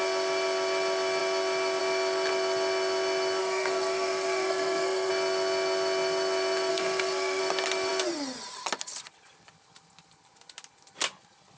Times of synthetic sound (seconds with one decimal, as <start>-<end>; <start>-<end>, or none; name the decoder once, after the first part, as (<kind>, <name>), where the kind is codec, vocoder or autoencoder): 3.4-5.1 (codec, SNAC); 6.7-7.4